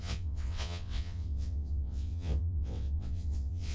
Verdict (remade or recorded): remade